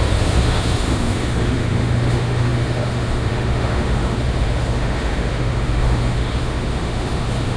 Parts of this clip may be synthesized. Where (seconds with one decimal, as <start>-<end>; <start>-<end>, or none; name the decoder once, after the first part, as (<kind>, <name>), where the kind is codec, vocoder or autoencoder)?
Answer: 0.0-7.6 (autoencoder, DAC-VAE)